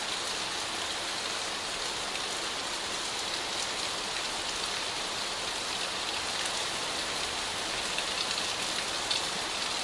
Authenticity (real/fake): real